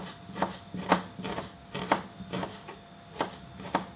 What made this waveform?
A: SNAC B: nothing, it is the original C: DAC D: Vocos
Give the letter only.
B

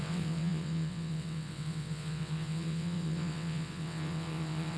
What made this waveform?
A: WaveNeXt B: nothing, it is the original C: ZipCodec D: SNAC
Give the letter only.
A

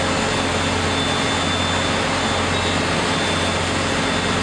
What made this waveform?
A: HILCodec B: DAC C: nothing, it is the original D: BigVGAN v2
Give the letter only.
C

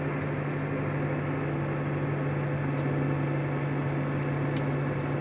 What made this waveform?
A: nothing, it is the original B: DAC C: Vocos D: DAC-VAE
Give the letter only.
A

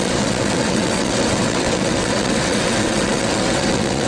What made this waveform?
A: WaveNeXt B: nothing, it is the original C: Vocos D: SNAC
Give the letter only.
A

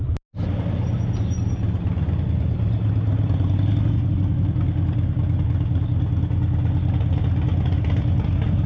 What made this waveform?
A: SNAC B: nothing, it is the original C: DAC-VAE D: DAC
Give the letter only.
B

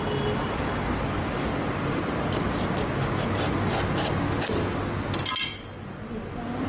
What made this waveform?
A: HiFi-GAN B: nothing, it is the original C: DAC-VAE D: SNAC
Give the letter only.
B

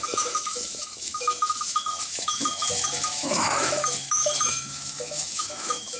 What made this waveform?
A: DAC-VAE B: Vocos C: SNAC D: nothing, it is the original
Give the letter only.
A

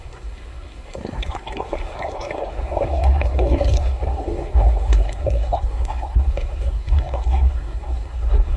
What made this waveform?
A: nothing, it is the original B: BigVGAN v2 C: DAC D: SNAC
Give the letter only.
D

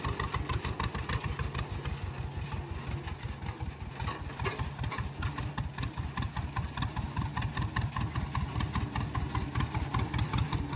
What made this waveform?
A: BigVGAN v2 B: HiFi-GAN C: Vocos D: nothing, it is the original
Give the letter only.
D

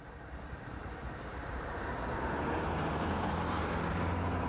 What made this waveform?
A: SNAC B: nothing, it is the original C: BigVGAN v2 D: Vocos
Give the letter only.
C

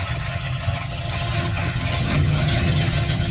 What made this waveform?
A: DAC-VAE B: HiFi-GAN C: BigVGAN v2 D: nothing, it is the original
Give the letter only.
B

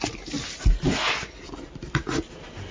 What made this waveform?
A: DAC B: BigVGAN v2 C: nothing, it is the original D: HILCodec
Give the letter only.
C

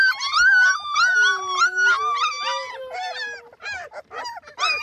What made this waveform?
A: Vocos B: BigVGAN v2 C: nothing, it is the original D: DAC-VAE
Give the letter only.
C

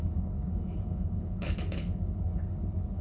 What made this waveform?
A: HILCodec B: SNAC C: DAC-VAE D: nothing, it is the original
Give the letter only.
A